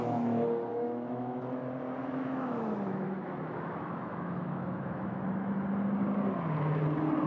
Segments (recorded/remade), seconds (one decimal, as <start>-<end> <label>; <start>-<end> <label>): 0.0-0.7 recorded; 0.7-1.4 remade; 1.4-2.0 recorded; 2.0-5.5 remade; 5.5-7.3 recorded